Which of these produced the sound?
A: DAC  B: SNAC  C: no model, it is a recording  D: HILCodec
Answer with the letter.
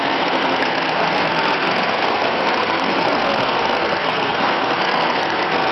B